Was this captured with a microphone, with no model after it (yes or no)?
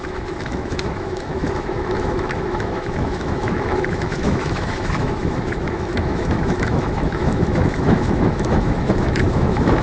no